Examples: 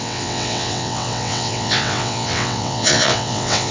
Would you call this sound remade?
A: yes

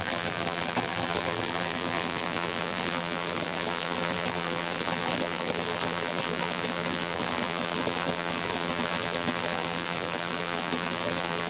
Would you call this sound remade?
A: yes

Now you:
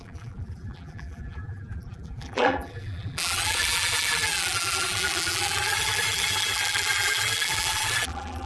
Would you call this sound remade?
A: yes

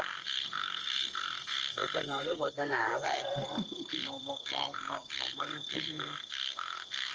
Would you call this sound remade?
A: yes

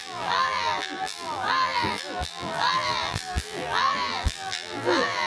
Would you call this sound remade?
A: yes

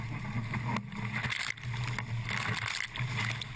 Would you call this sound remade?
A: no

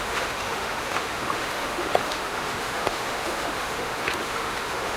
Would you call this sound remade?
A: yes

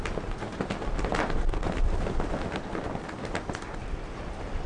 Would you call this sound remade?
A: no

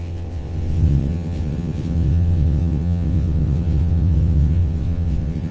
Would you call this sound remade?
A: yes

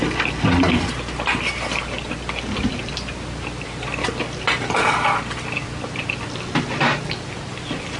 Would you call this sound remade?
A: no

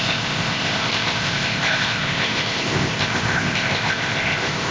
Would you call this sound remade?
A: yes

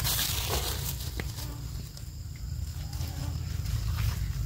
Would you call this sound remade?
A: no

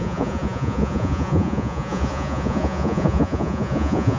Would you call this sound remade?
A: yes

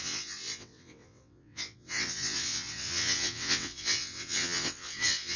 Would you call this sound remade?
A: yes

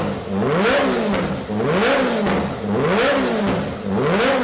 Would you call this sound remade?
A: no